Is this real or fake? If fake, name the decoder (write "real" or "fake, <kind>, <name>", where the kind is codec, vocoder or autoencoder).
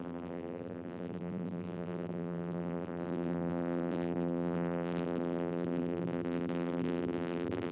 fake, vocoder, BigVGAN v2